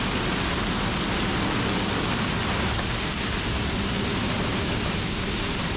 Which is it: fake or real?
real